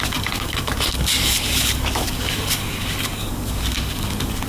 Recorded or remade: remade